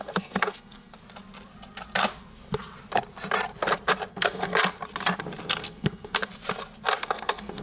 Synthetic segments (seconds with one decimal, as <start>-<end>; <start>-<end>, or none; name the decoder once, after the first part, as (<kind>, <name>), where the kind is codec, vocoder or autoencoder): 0.0-1.0 (codec, SNAC); 4.1-4.5; 5.6-6.3; 7.0-7.6